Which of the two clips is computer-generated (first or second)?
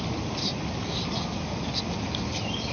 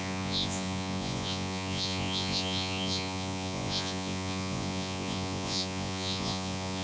second